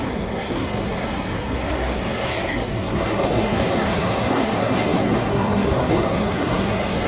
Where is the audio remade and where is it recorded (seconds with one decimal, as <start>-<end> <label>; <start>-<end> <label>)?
0.0-7.1 remade

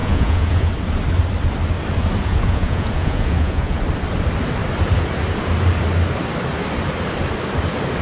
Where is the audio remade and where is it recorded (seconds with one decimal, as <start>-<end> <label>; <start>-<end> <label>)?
0.0-0.7 remade; 0.7-2.2 recorded; 2.2-3.8 remade; 3.8-8.0 recorded

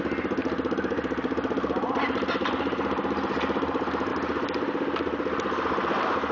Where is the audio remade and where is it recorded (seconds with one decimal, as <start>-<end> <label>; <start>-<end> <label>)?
0.0-0.4 recorded; 0.4-2.5 remade; 2.5-6.3 recorded

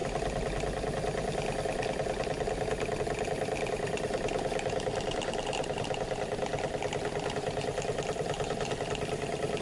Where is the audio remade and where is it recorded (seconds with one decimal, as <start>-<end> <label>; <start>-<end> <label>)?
0.0-9.6 recorded